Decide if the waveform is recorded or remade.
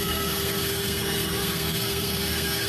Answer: remade